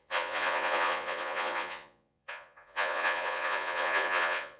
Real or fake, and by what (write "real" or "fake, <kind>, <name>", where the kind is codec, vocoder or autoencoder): fake, vocoder, Vocos